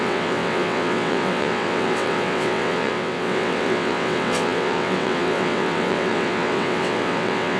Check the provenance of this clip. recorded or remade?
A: remade